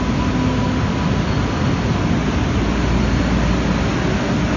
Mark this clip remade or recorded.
recorded